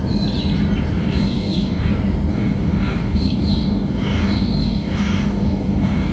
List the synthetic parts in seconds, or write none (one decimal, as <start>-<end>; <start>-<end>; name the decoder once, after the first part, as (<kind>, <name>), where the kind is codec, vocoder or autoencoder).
1.0-1.9 (codec, DAC); 2.3-6.1